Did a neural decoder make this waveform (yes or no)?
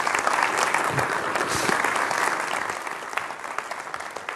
no